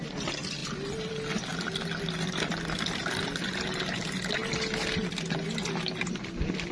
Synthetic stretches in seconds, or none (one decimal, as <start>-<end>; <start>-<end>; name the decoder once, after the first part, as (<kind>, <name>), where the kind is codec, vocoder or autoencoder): none